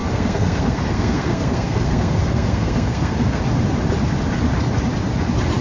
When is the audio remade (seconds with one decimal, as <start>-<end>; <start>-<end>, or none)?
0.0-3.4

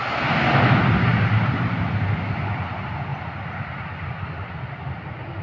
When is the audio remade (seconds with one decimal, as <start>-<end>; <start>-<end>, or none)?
none

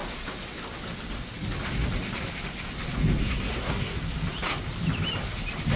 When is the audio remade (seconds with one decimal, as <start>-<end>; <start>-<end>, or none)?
3.2-4.0

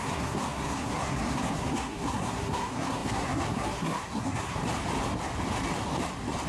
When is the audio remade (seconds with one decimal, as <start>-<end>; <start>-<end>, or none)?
0.0-4.6

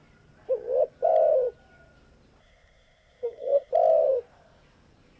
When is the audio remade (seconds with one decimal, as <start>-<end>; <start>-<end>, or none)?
2.4-3.7

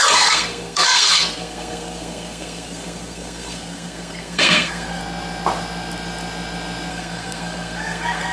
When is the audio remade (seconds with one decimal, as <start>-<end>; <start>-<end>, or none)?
0.0-5.0; 6.9-8.3

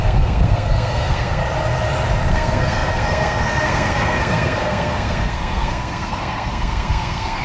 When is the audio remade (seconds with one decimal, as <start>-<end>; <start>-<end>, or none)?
0.0-1.4; 2.3-7.4